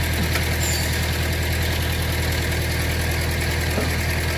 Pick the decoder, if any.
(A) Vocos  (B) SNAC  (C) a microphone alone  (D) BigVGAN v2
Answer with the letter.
C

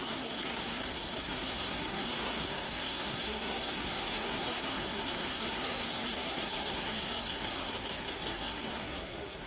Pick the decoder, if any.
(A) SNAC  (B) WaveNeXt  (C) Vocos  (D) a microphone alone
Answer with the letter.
A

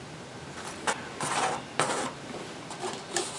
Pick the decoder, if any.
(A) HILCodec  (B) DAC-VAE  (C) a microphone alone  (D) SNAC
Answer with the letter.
C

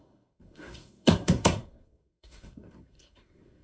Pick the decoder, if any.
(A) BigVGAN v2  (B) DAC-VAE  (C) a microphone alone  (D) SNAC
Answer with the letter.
D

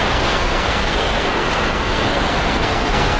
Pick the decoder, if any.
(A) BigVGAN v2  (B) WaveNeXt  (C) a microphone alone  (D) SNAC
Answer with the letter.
D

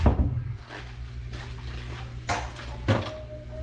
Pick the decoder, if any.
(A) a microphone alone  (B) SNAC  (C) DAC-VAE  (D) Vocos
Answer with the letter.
A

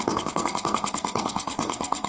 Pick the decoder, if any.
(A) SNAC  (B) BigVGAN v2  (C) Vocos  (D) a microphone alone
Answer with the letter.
A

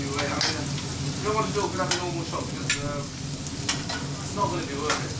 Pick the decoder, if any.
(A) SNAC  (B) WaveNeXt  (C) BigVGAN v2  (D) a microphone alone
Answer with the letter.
D